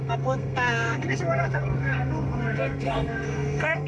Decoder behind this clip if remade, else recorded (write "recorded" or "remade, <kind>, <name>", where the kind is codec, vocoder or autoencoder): remade, codec, SNAC